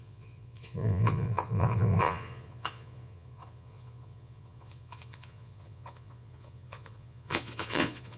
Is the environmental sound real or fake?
fake